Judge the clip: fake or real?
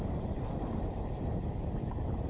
real